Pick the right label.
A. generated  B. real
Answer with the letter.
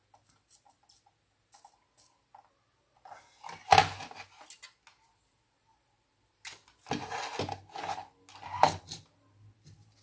B